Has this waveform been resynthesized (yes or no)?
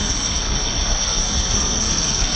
yes